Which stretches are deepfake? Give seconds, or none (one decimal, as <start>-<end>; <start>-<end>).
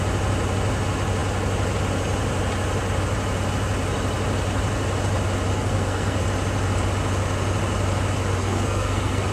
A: 5.5-6.2; 8.4-9.3